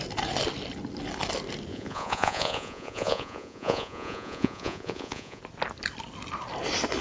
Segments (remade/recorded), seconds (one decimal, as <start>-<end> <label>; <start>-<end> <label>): 0.0-1.7 recorded; 1.7-5.4 remade; 5.4-7.0 recorded